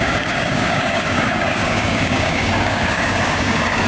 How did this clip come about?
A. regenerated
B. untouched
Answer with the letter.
A